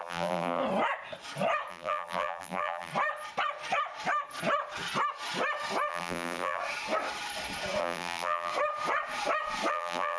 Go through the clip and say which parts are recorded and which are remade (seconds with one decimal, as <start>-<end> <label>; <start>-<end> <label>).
0.0-0.6 remade; 0.6-1.7 recorded; 1.7-2.9 remade; 2.9-5.9 recorded; 5.9-6.6 remade; 6.6-7.8 recorded; 7.8-8.5 remade; 8.5-9.7 recorded; 9.7-10.2 remade